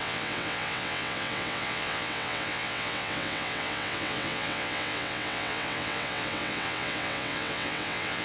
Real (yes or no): no